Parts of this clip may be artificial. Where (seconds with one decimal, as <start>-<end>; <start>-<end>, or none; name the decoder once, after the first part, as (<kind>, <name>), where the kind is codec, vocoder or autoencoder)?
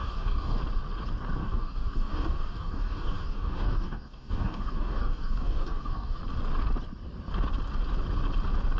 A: 0.0-0.6 (codec, DAC); 1.4-6.2